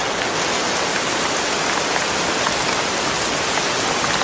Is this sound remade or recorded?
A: recorded